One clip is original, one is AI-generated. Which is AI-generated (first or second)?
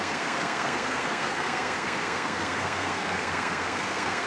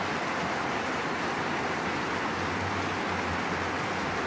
first